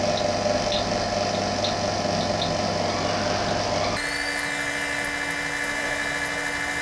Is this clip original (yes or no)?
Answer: yes